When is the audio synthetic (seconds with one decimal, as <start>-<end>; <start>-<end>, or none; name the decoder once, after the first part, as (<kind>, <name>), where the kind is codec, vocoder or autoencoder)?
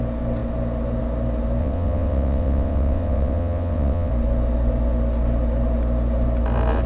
1.6-4.1 (vocoder, WaveNeXt)